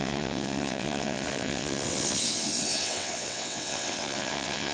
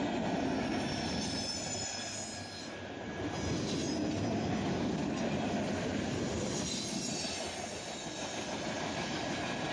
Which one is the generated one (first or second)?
first